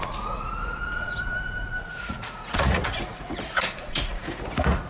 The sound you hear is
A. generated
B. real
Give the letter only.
A